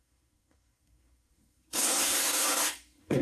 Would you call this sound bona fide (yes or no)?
no